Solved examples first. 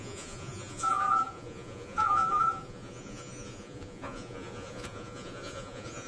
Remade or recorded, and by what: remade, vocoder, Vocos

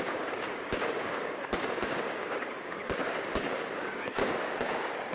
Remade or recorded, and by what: remade, codec, DAC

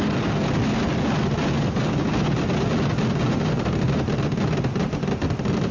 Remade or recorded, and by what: recorded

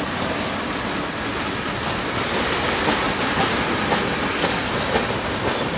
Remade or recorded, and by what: recorded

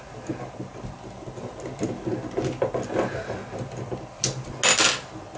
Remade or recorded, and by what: recorded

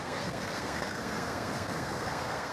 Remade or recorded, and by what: remade, codec, SNAC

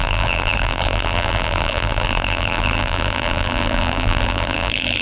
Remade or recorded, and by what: remade, vocoder, BigVGAN v2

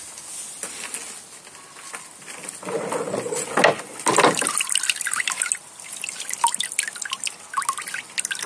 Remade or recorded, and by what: recorded